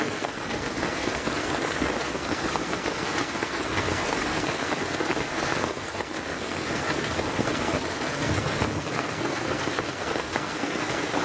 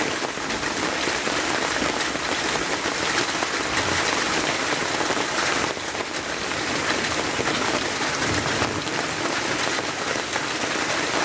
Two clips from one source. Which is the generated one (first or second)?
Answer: first